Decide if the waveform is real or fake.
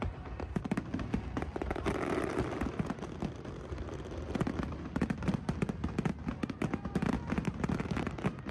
real